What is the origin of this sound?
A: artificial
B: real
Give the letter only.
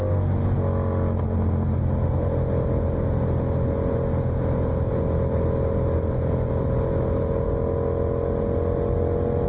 B